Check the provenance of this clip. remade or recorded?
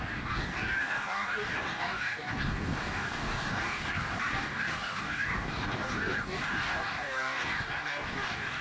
remade